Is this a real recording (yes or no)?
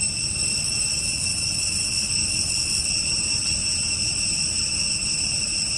yes